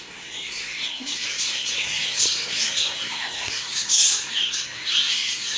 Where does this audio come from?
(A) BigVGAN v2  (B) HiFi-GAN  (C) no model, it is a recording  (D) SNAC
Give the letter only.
D